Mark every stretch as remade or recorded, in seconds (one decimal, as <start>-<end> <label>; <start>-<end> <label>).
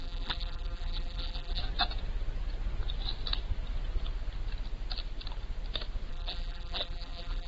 0.0-1.6 remade; 1.6-6.1 recorded; 6.1-7.5 remade